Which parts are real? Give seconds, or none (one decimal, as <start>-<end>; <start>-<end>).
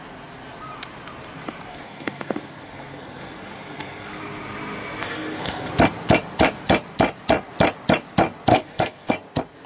0.0-1.7; 4.2-5.0; 5.7-8.5; 9.1-9.7